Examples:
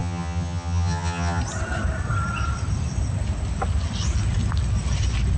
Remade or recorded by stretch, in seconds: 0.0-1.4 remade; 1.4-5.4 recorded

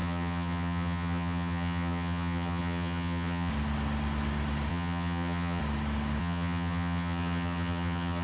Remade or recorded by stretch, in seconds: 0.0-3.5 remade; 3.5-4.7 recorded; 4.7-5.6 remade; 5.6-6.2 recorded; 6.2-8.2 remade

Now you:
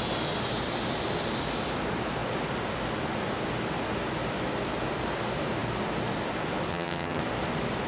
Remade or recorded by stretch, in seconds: 0.0-6.7 recorded; 6.7-7.2 remade; 7.2-7.9 recorded

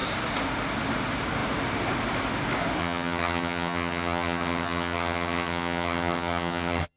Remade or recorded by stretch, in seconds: 0.0-2.8 recorded; 2.8-7.0 remade

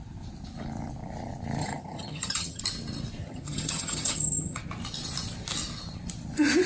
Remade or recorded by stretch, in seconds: 0.0-1.6 recorded; 1.6-2.6 remade; 2.6-3.2 recorded; 3.2-4.6 remade; 4.6-6.7 recorded

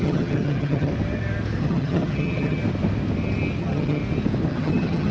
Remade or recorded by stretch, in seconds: 0.0-0.9 remade; 0.9-1.6 recorded; 1.6-2.6 remade; 2.6-3.6 recorded; 3.6-4.0 remade; 4.0-4.5 recorded; 4.5-5.1 remade